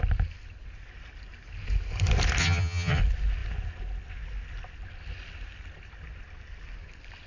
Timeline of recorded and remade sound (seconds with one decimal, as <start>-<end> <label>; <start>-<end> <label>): 0.0-2.4 recorded; 2.4-3.0 remade; 3.0-7.3 recorded